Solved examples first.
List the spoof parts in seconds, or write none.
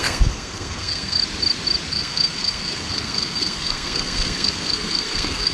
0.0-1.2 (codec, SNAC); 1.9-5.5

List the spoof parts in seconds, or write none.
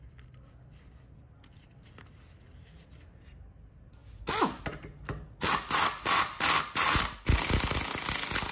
none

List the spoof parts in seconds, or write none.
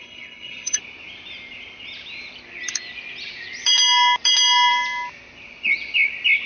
0.0-0.8 (codec, HILCodec)